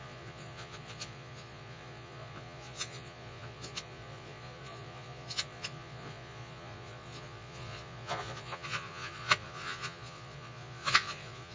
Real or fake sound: fake